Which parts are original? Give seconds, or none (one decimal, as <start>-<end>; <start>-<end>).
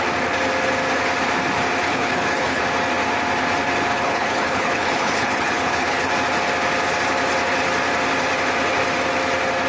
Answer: 0.0-1.9; 2.6-3.9; 6.1-9.7